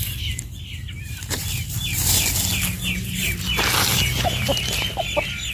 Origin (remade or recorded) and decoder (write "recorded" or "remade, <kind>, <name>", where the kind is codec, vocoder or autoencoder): recorded